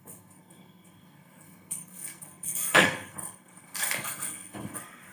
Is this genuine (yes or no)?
no